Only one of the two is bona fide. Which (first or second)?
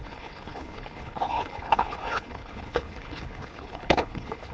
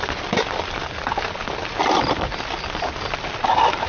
second